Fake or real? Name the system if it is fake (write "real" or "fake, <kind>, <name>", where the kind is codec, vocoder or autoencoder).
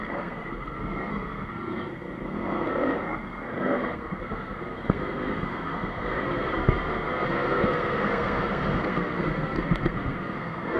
fake, codec, SNAC